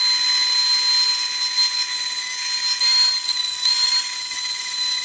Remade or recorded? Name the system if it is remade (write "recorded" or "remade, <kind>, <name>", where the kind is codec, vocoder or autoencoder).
recorded